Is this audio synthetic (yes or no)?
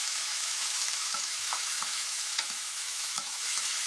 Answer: yes